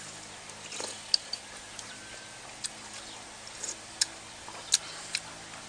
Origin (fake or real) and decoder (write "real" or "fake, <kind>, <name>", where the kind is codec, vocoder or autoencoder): real